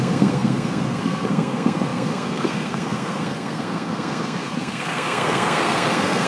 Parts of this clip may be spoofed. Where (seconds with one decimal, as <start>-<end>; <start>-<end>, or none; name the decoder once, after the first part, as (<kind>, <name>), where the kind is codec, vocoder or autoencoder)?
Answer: 0.0-6.3 (codec, SNAC)